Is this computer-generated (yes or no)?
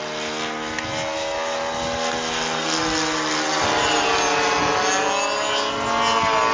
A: no